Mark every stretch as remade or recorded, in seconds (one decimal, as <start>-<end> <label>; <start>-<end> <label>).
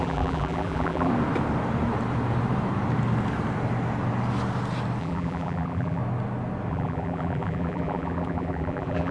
0.0-1.1 remade; 1.1-5.0 recorded; 5.0-6.0 remade; 6.0-6.7 recorded; 6.7-9.1 remade